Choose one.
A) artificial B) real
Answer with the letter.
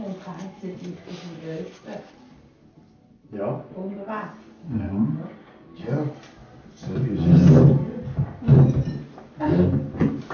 B